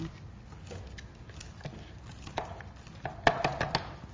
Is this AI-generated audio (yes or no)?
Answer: no